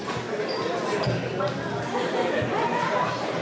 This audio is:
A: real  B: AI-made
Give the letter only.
A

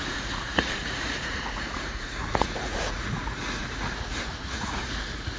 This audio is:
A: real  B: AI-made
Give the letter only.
B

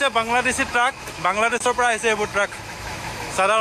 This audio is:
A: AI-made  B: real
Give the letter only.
A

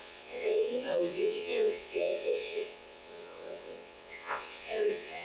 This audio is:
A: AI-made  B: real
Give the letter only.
A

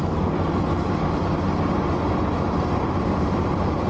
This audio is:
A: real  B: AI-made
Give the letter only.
A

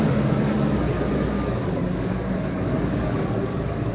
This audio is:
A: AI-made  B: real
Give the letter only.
A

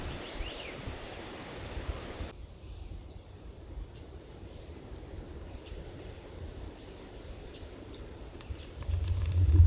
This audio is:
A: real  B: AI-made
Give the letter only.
B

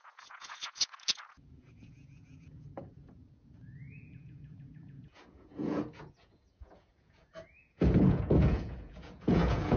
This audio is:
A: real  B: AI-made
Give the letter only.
B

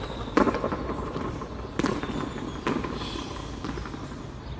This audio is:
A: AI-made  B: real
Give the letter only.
B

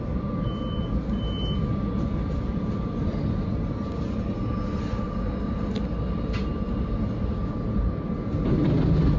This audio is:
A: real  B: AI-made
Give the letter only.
A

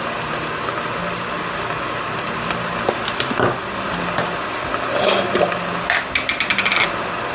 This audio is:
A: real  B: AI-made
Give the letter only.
A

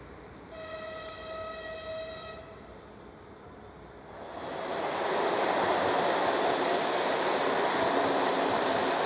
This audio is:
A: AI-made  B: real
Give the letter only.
B